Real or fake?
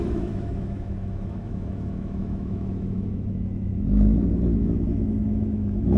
fake